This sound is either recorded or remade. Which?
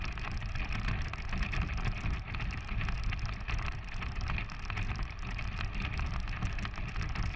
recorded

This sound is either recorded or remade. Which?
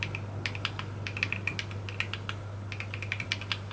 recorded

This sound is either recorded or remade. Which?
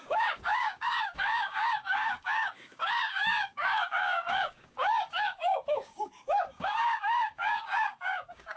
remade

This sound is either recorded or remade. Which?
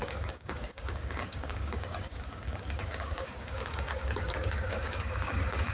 remade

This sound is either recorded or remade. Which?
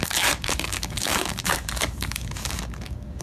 remade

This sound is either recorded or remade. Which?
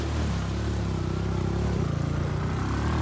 recorded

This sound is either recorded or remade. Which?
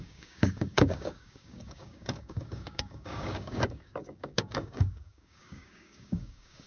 remade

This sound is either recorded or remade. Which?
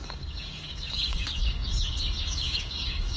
remade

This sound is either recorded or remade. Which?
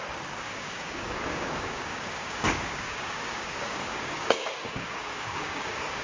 remade